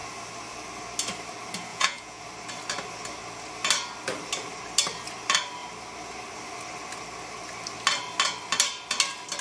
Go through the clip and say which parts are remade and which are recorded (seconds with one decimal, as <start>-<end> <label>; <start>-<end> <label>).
0.0-1.7 recorded; 1.7-2.2 remade; 2.2-9.4 recorded